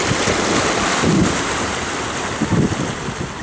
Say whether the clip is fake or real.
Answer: real